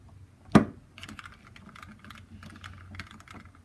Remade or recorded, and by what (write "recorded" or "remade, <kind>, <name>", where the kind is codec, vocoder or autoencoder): recorded